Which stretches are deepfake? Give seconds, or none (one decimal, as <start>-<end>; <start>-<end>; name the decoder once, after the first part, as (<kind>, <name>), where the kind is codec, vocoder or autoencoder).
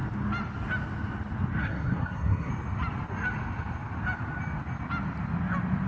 1.6-2.5 (codec, SNAC)